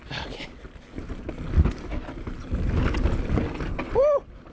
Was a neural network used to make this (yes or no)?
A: no